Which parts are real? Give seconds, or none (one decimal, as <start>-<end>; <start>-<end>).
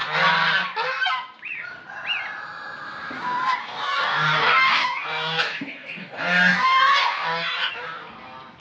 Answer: 0.0-3.6; 7.7-8.6